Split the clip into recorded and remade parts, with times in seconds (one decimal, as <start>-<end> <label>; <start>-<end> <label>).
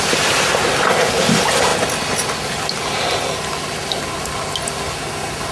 0.0-5.5 recorded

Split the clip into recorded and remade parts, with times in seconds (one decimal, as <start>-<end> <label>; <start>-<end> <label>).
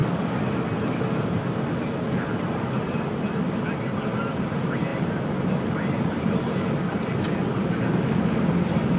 0.0-9.0 recorded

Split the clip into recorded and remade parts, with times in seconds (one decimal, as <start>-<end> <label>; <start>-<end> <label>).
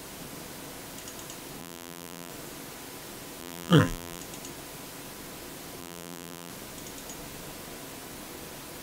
0.0-1.6 recorded; 1.6-2.3 remade; 2.3-3.4 recorded; 3.4-4.2 remade; 4.2-5.8 recorded; 5.8-6.5 remade; 6.5-8.8 recorded